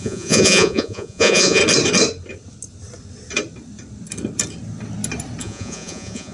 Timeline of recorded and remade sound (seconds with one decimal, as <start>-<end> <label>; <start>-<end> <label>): 0.0-1.6 remade; 1.6-5.4 recorded; 5.4-6.3 remade